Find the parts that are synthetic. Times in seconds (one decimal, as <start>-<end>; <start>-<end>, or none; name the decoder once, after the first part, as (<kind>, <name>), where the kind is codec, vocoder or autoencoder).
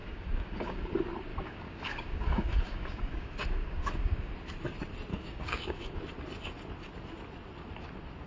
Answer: 0.0-0.8 (codec, DAC); 1.3-4.3; 5.1-6.0